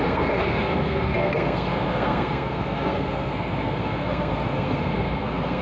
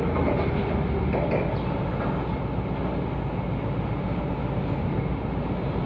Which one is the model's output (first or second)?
first